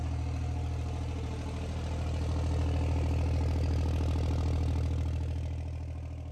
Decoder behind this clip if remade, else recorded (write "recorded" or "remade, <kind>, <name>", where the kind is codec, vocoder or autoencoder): recorded